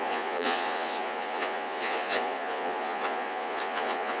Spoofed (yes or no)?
yes